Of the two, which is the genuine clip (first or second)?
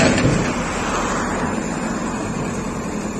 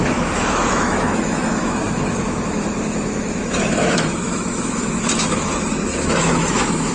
first